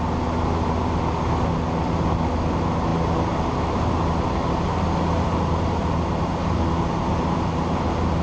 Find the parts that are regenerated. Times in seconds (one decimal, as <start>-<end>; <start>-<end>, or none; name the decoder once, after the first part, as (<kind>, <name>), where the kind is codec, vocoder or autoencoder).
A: none